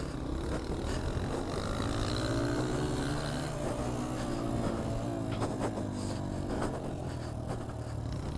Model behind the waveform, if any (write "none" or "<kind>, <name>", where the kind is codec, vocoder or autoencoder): none